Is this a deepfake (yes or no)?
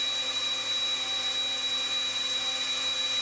no